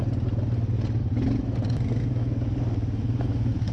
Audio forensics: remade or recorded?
recorded